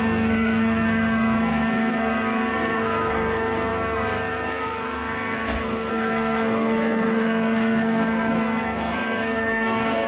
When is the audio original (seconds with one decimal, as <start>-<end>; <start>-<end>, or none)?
none